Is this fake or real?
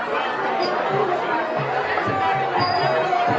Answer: real